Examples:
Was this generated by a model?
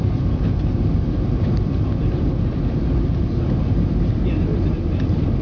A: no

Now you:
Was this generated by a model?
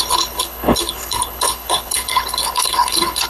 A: yes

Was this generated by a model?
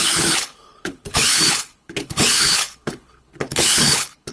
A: yes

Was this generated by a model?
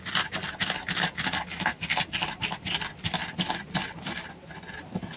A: no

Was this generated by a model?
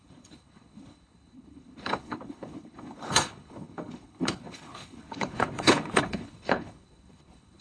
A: yes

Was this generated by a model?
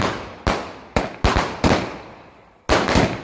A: no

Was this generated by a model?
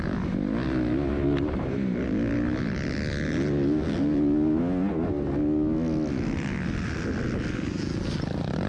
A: no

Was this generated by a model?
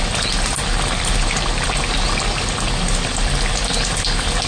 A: no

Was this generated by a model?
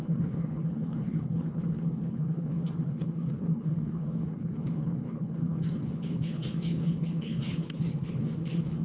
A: yes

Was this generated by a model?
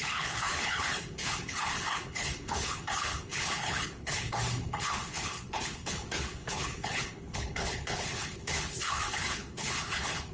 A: yes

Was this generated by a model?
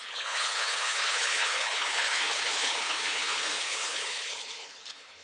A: yes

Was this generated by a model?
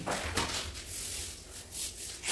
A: no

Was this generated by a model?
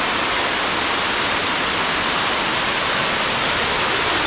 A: no